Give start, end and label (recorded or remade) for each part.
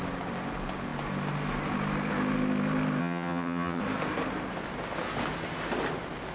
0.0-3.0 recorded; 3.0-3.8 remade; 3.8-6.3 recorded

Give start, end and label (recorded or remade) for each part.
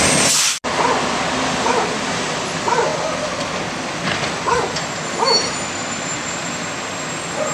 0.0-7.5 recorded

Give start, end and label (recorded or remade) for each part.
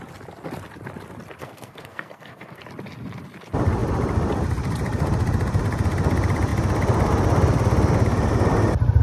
0.0-1.4 recorded; 1.4-2.6 remade; 2.6-9.0 recorded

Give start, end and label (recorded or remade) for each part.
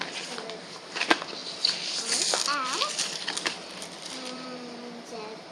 0.0-1.4 recorded; 1.4-4.7 remade; 4.7-5.5 recorded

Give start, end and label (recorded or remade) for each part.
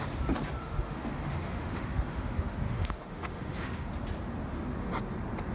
0.0-0.6 recorded; 0.6-3.9 remade; 3.9-5.5 recorded